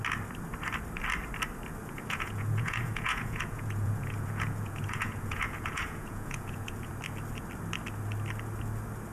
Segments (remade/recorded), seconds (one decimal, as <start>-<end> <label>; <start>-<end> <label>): 0.0-1.8 recorded; 1.8-6.9 remade; 6.9-9.1 recorded